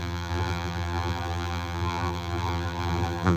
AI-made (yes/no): yes